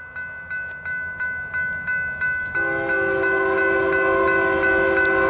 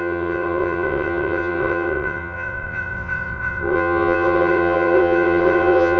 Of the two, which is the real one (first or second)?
first